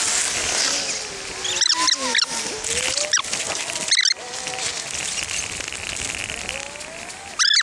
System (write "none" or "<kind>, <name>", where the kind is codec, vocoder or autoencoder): none